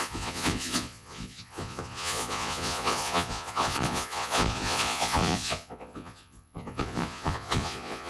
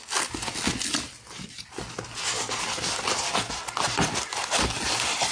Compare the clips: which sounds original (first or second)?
second